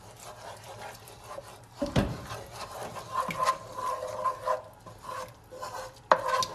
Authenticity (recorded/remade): recorded